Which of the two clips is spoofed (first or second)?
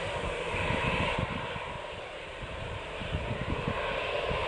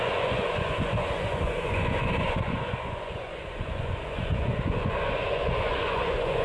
second